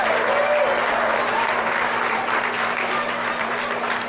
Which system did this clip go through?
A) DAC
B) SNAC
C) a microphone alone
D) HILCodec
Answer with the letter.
C